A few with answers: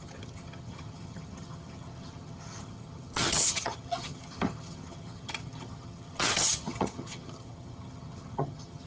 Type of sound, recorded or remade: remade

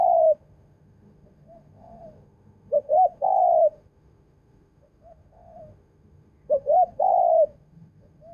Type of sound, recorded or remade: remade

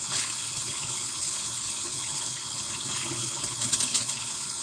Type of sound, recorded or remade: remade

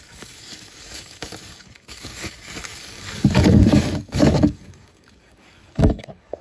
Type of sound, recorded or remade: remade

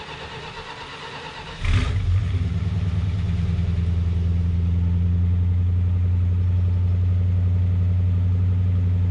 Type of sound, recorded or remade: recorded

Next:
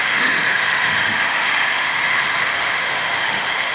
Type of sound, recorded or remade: remade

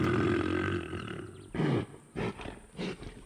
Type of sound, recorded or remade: recorded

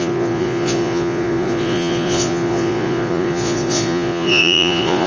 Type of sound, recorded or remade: remade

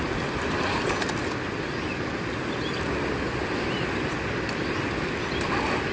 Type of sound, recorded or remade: recorded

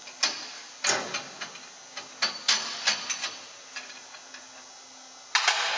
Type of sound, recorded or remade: recorded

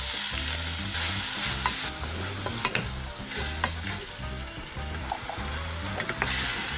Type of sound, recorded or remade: recorded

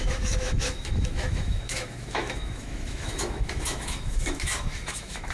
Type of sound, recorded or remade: remade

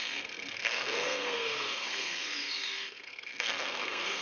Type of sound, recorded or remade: remade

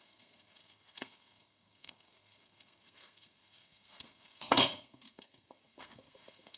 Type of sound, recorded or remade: remade